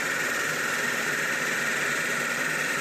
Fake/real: fake